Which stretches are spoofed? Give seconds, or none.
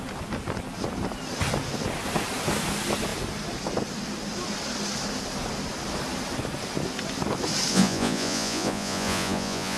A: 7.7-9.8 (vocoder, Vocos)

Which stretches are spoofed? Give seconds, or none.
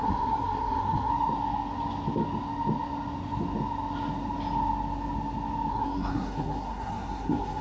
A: 0.0-1.1 (codec, SNAC); 5.7-7.6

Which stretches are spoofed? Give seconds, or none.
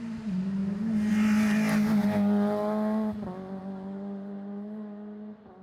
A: none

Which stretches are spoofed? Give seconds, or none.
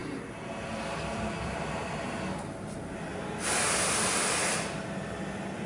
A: none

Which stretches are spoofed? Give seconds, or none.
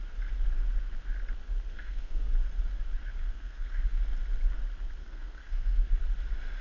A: 1.7-2.3 (codec, SNAC); 3.2-4.0; 5.0-6.0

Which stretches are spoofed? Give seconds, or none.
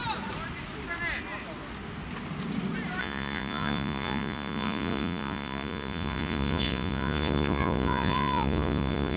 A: 3.0-9.2 (vocoder, Vocos)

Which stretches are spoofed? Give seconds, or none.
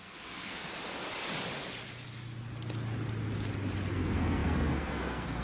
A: 0.0-0.7 (codec, SNAC); 3.9-5.4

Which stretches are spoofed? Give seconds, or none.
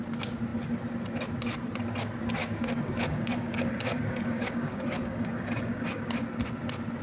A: 2.4-6.0 (codec, DAC)